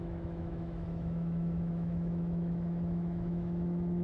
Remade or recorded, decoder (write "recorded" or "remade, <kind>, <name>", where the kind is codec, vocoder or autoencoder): remade, autoencoder, DAC-VAE